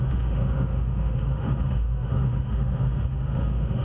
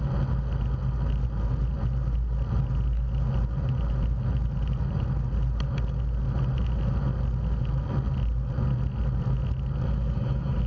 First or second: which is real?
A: second